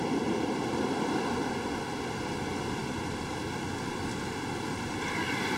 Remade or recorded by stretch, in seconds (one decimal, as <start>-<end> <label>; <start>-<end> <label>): 0.0-5.6 recorded